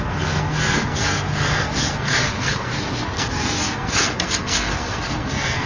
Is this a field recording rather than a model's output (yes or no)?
no